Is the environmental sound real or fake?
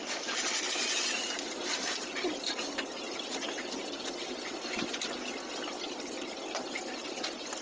real